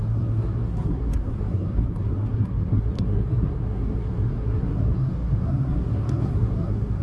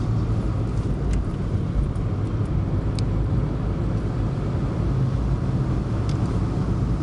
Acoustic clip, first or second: second